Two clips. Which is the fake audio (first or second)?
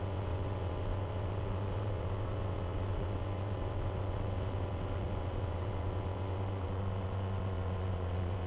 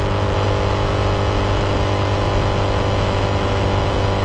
first